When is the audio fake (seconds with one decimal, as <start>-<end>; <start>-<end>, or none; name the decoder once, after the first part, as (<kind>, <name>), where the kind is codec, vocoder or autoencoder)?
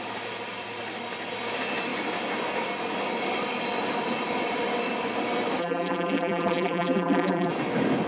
5.6-7.5 (vocoder, BigVGAN v2)